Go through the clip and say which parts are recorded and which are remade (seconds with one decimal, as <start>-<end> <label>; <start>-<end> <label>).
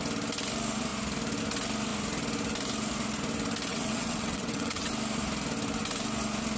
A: 0.0-3.7 recorded; 3.7-4.9 remade; 4.9-6.6 recorded